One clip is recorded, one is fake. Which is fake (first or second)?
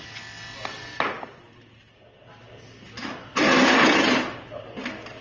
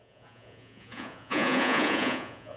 second